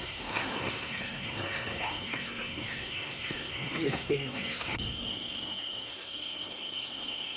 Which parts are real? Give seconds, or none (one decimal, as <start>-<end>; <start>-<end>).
none